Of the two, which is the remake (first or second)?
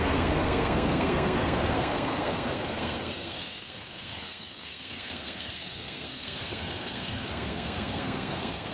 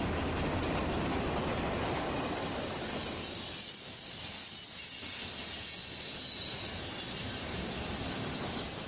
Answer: first